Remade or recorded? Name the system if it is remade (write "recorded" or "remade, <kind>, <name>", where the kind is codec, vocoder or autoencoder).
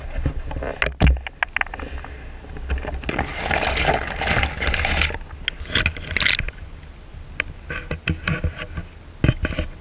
recorded